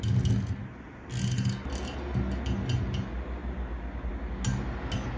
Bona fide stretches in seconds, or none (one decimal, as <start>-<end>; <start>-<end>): 0.0-0.6; 1.1-5.2